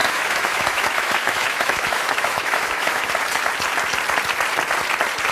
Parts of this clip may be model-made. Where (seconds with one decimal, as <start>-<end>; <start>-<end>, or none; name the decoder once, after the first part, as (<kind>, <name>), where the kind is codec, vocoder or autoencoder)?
0.0-3.1 (autoencoder, DAC-VAE)

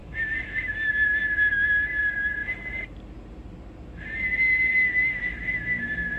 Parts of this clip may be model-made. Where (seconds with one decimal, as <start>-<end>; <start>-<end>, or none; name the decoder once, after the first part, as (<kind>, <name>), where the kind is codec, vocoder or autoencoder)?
0.0-0.9 (autoencoder, DAC-VAE)

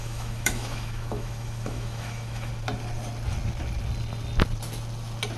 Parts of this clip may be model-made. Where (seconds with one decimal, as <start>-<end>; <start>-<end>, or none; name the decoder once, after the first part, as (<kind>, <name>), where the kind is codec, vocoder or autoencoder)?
0.0-2.5 (autoencoder, DAC-VAE)

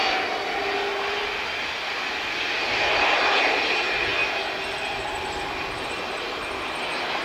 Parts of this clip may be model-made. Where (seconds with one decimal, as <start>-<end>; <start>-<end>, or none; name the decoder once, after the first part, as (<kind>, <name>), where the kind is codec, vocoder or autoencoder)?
none

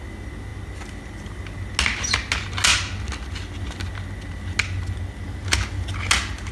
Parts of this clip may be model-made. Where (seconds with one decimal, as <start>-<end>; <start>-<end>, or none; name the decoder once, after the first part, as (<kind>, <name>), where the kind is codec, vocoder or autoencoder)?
none

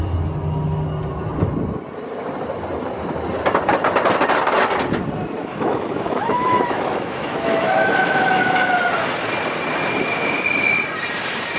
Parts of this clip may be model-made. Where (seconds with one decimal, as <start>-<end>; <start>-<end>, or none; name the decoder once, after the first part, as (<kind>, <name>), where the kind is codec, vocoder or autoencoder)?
5.4-8.7 (autoencoder, DAC-VAE)